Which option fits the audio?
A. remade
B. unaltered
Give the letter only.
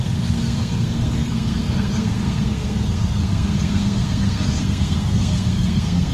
A